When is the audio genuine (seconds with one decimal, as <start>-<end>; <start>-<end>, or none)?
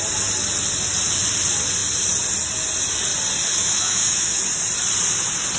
0.0-3.6; 4.4-5.6